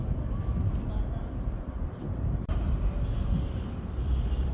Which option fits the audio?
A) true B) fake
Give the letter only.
A